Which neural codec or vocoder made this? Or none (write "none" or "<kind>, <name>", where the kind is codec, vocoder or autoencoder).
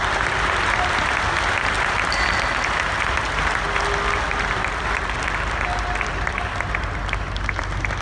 none